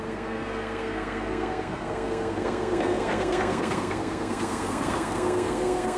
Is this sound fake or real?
fake